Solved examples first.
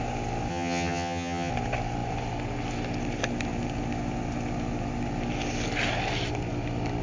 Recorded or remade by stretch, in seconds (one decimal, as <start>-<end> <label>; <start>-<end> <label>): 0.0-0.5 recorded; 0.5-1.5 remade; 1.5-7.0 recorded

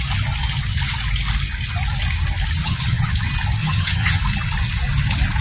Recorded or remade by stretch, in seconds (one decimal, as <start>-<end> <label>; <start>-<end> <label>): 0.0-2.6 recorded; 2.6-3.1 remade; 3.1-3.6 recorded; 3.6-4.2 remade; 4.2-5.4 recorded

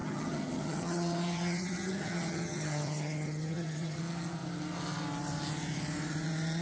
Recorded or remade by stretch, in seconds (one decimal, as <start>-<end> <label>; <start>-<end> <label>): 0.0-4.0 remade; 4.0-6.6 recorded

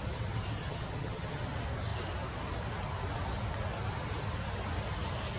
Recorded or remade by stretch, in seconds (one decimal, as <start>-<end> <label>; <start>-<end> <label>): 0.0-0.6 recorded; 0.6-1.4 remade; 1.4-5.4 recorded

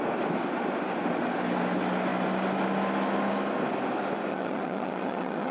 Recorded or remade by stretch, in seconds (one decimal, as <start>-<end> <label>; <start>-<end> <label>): 0.0-4.3 recorded; 4.3-5.5 remade

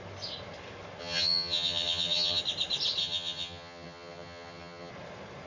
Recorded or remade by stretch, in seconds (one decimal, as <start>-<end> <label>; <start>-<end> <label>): 0.0-1.0 recorded; 1.0-2.4 remade; 2.4-3.0 recorded; 3.0-4.9 remade; 4.9-5.5 recorded

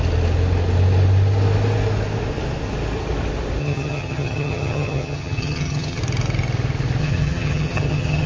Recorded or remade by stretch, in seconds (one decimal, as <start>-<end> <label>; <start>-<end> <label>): 0.0-3.6 recorded; 3.6-6.0 remade; 6.0-7.0 recorded; 7.0-8.3 remade

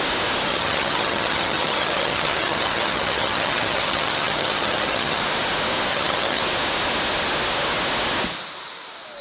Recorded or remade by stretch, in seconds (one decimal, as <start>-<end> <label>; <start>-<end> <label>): 0.0-0.5 recorded; 0.5-5.2 remade; 5.2-5.9 recorded; 5.9-6.4 remade; 6.4-9.2 recorded